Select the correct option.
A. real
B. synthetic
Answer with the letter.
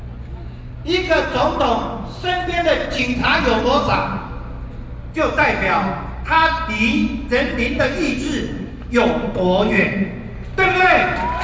A